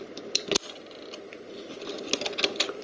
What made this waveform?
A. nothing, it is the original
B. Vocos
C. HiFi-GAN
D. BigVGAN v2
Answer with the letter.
A